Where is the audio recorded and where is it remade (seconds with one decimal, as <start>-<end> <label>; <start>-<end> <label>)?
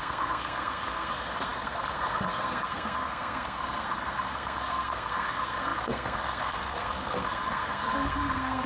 0.0-8.7 remade